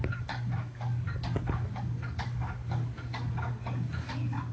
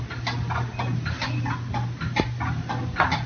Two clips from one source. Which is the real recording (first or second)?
second